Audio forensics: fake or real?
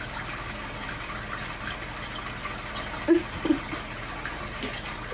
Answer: real